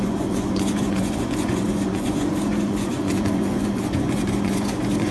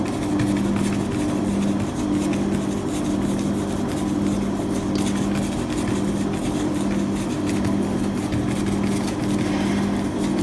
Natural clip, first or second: second